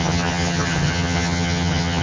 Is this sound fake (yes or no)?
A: yes